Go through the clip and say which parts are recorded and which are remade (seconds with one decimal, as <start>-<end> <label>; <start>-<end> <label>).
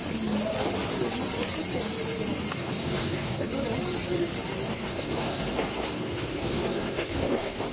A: 0.0-2.6 recorded; 2.6-3.5 remade; 3.5-4.7 recorded; 4.7-7.7 remade